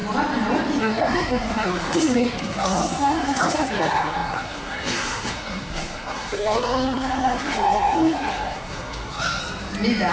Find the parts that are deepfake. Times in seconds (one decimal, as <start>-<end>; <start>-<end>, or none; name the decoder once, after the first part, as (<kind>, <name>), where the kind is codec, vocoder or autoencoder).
0.8-9.4 (codec, SNAC)